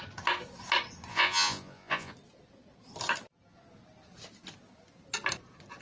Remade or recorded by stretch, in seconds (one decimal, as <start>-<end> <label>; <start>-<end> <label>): 0.0-1.1 recorded; 1.1-2.1 remade; 2.1-5.8 recorded